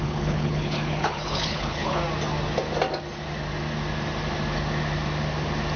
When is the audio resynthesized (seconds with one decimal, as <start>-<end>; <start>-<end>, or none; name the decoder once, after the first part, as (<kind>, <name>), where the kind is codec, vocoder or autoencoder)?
0.0-2.0 (codec, HILCodec)

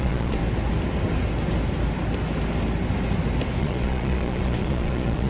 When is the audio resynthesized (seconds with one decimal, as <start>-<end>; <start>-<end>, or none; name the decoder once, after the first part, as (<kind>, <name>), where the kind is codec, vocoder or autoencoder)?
0.0-0.4 (vocoder, Vocos); 3.6-5.3

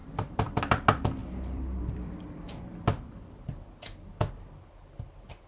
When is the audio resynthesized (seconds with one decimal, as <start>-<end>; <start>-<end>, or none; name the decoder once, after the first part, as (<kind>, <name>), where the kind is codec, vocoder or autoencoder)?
0.0-0.6 (vocoder, BigVGAN v2); 1.2-3.7